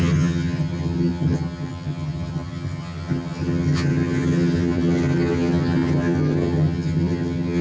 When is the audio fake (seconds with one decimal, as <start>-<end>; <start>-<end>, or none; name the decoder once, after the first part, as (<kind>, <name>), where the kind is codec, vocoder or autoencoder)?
0.0-7.6 (vocoder, HiFi-GAN)